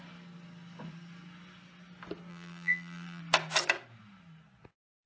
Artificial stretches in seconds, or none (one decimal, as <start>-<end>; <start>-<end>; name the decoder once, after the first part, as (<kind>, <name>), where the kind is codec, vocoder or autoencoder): 2.3-3.2 (vocoder, BigVGAN v2)